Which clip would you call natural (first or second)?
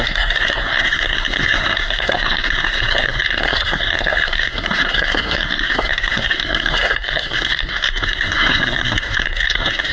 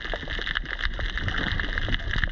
second